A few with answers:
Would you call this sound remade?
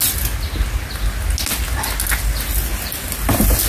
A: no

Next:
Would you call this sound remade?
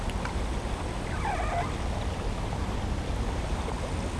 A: no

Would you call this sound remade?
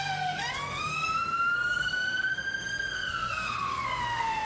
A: yes